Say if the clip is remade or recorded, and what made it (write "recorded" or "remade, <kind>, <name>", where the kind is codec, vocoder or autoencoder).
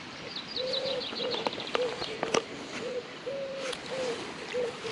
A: recorded